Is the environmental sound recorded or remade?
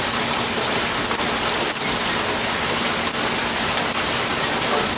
recorded